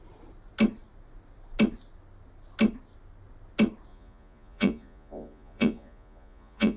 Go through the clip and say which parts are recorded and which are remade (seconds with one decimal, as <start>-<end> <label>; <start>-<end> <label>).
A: 0.0-3.9 recorded; 3.9-6.8 remade

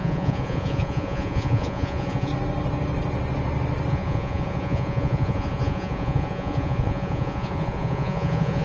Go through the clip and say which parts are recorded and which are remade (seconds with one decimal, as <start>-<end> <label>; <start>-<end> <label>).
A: 0.0-2.3 remade; 2.3-3.9 recorded; 3.9-8.6 remade

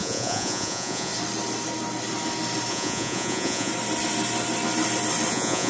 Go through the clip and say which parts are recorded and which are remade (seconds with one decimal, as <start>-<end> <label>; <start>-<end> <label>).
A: 0.0-1.1 remade; 1.1-2.7 recorded; 2.7-3.7 remade; 3.7-5.3 recorded; 5.3-5.7 remade

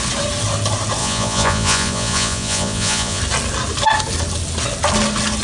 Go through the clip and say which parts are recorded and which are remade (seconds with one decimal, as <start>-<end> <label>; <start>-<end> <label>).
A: 0.0-1.0 recorded; 1.0-3.2 remade; 3.2-5.4 recorded

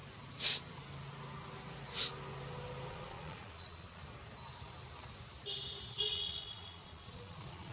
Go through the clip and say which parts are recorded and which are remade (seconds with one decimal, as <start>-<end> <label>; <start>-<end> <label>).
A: 0.0-2.9 recorded; 2.9-4.0 remade; 4.0-5.9 recorded; 5.9-7.7 remade

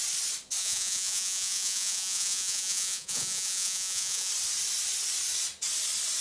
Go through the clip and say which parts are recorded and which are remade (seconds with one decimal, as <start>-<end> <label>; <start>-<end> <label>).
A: 0.0-0.6 recorded; 0.6-4.3 remade; 4.3-6.2 recorded

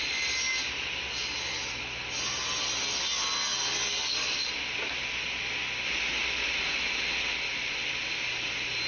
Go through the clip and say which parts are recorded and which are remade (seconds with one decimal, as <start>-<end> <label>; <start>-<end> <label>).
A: 0.0-8.9 recorded